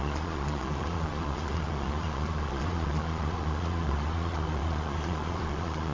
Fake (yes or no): yes